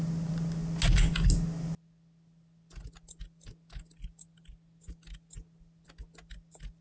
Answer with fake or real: real